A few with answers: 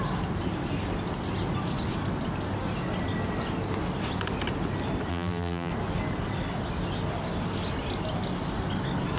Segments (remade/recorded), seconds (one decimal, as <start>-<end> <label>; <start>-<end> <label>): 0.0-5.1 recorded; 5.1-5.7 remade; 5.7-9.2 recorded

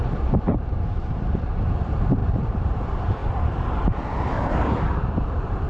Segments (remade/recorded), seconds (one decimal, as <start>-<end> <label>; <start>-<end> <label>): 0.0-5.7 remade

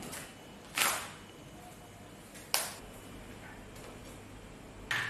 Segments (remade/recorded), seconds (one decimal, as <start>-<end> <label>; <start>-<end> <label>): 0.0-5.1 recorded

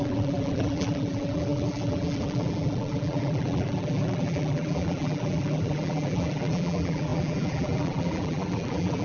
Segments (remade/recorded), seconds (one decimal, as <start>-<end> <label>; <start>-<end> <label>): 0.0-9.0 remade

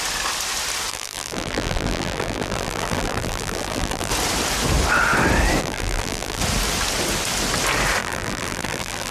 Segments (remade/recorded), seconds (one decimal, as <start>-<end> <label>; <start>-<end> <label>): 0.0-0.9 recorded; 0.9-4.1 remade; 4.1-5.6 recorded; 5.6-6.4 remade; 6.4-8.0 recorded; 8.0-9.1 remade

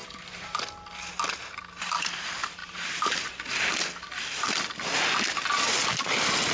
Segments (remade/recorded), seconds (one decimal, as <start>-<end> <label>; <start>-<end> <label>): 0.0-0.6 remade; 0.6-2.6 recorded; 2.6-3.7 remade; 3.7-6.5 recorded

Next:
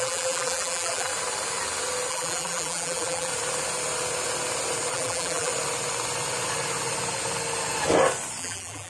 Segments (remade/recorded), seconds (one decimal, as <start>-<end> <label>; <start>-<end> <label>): 0.0-1.1 remade; 1.1-2.1 recorded; 2.1-3.3 remade; 3.3-4.9 recorded; 4.9-5.5 remade; 5.5-8.4 recorded; 8.4-8.9 remade

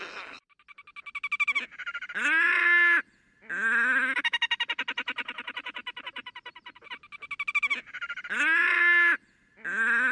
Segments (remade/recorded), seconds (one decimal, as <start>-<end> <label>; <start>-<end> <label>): 0.0-10.1 recorded